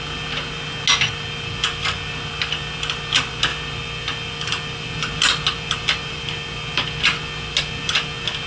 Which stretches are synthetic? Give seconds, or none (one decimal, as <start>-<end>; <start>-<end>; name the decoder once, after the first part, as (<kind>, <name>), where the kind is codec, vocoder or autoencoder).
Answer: none